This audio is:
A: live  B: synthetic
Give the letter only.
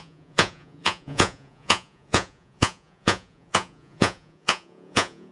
B